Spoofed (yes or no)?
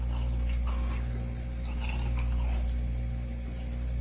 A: no